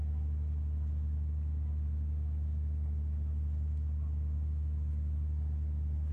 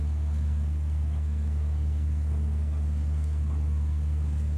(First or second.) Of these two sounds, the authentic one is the first